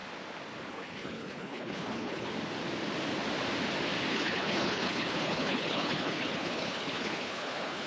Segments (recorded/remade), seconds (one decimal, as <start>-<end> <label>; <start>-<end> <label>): 0.0-0.7 recorded; 0.7-2.3 remade; 2.3-4.1 recorded; 4.1-7.9 remade